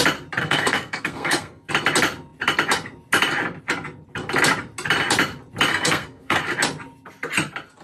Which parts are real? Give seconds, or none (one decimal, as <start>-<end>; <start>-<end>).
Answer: 0.0-0.4; 1.7-5.7; 6.4-7.8